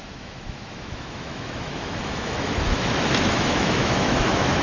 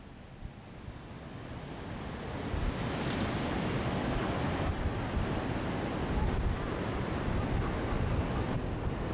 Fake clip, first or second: first